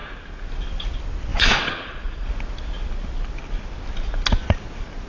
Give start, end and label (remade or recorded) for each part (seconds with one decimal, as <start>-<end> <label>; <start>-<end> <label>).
0.0-1.3 recorded; 1.3-2.3 remade; 2.3-5.1 recorded